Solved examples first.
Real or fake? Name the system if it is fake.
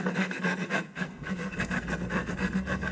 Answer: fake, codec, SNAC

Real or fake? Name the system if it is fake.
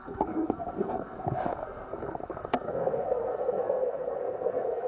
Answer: fake, codec, SNAC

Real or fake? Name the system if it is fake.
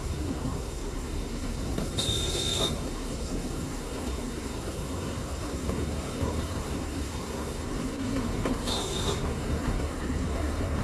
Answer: fake, codec, SNAC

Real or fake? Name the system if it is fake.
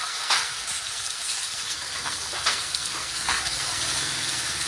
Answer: fake, codec, SNAC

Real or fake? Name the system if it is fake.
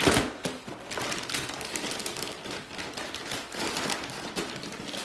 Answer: real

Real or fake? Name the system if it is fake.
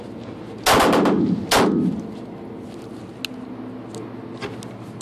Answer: real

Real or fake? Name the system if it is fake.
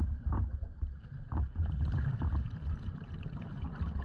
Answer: real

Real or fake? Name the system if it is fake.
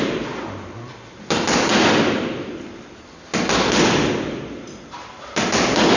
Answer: real